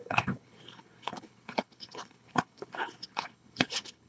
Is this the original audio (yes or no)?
no